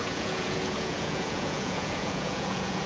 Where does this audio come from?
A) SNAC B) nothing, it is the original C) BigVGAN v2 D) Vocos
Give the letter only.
D